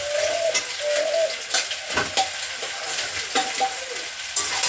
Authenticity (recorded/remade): recorded